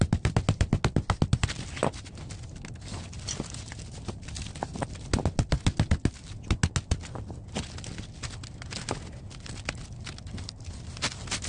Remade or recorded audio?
recorded